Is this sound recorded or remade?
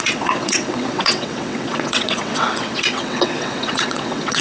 remade